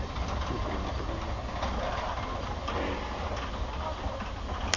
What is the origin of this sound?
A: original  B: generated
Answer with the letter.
A